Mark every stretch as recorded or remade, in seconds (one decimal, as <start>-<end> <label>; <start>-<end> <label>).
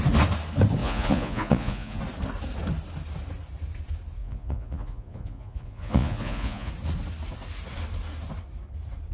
0.0-0.8 recorded; 0.8-2.0 remade; 2.0-4.2 recorded; 4.2-6.7 remade; 6.7-9.1 recorded